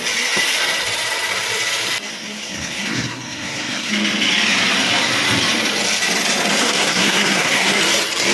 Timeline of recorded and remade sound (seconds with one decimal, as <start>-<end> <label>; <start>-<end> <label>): 0.0-2.1 recorded; 2.1-3.9 remade; 3.9-6.6 recorded; 6.6-7.8 remade; 7.8-8.3 recorded